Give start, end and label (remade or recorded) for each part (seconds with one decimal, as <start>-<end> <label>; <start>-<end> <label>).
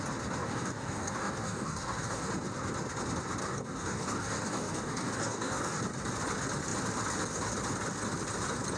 0.0-0.4 recorded; 0.4-2.3 remade; 2.3-3.4 recorded; 3.4-5.8 remade; 5.8-8.8 recorded